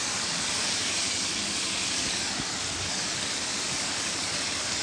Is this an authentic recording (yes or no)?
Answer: no